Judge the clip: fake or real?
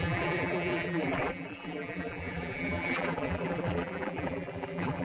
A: fake